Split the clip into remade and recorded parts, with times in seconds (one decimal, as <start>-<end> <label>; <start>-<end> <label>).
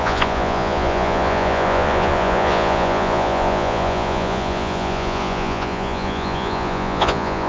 0.0-7.5 remade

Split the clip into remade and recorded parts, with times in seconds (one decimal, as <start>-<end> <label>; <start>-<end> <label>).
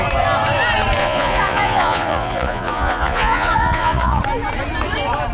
0.0-1.0 recorded; 1.0-4.2 remade; 4.2-5.3 recorded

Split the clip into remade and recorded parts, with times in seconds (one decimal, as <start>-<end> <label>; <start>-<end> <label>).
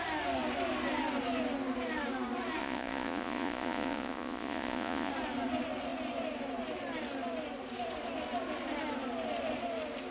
0.0-2.6 recorded; 2.6-5.1 remade; 5.1-10.1 recorded